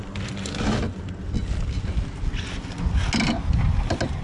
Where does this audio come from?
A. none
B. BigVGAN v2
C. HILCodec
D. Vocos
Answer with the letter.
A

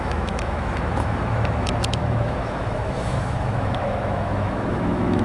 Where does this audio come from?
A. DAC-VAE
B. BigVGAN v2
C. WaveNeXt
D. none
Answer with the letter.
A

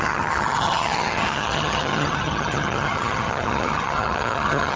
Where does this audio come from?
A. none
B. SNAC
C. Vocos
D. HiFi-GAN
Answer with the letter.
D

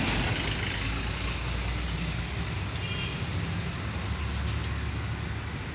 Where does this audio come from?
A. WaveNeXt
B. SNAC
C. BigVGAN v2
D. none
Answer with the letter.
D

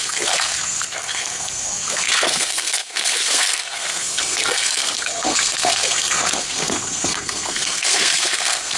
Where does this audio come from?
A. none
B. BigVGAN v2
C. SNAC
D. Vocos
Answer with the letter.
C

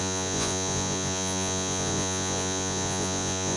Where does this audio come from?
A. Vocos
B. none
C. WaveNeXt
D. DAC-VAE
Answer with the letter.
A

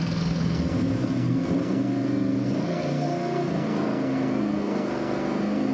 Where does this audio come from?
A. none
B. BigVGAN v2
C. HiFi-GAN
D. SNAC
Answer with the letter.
D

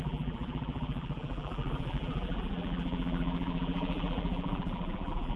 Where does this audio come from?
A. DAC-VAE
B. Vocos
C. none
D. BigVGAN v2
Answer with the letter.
D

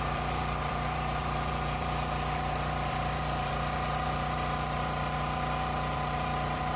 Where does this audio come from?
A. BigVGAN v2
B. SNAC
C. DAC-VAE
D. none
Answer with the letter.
A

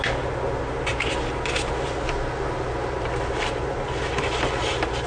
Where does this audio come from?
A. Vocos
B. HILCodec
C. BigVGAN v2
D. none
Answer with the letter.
D